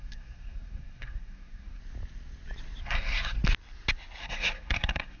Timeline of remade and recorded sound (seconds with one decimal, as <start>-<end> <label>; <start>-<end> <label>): 0.0-1.8 remade; 1.8-2.8 recorded; 2.8-3.4 remade; 3.4-4.2 recorded; 4.2-5.2 remade